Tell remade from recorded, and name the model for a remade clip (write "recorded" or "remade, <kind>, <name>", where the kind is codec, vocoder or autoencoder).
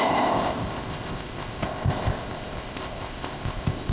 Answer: remade, codec, ZipCodec